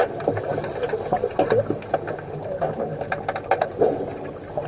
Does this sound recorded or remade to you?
recorded